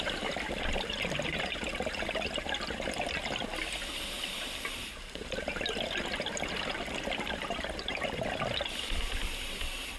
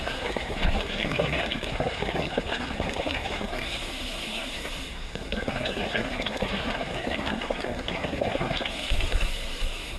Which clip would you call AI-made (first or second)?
second